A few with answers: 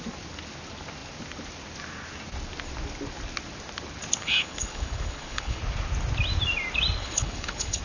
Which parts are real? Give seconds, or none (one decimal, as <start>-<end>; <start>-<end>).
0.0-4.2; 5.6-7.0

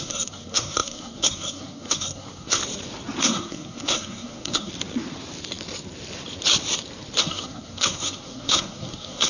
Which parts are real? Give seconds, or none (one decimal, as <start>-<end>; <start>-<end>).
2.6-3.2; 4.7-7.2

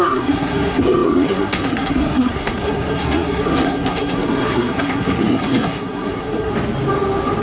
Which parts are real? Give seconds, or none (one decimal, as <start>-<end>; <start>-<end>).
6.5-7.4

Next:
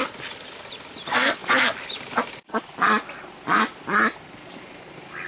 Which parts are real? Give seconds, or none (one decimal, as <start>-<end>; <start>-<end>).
0.0-5.3

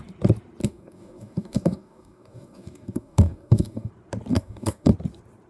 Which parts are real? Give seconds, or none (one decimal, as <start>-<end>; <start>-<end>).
0.0-0.6; 3.9-4.3; 4.9-5.5

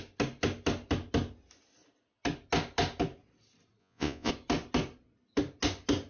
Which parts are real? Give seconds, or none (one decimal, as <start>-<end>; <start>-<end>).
0.0-3.8; 4.3-6.1

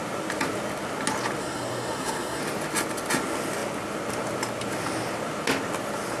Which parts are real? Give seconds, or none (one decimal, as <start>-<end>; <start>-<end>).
0.0-1.4; 2.4-6.2